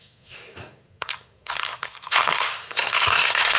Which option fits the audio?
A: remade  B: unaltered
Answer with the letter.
A